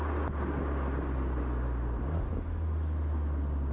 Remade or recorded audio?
recorded